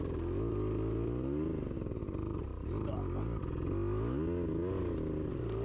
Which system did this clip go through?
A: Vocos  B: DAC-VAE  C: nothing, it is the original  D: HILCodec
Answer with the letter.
C